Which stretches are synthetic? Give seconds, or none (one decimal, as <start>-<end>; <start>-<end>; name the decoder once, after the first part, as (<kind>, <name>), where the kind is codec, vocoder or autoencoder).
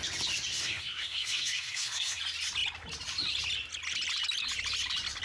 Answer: 0.5-2.2 (codec, SNAC)